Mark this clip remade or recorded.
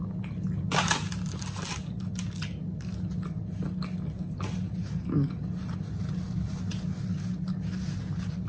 recorded